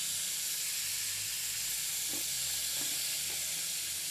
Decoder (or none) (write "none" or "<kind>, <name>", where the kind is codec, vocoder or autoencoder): none